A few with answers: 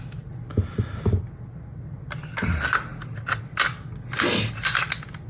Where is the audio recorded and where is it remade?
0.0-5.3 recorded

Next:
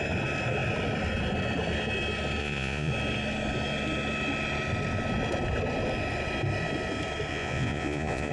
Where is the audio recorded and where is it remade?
0.0-2.4 recorded; 2.4-2.9 remade; 2.9-7.3 recorded; 7.3-8.3 remade